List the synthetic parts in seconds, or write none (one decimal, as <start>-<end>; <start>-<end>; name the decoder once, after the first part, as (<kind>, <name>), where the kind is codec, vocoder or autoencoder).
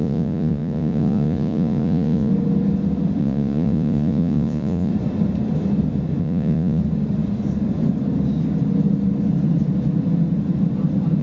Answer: 0.0-2.3 (vocoder, Vocos); 3.2-4.9; 6.2-6.8